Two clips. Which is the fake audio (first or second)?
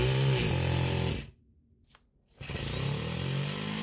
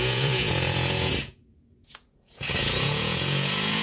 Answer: second